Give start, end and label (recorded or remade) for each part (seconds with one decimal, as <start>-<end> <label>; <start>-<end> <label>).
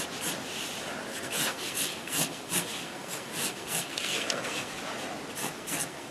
0.0-1.1 recorded; 1.1-4.8 remade; 4.8-5.4 recorded; 5.4-6.1 remade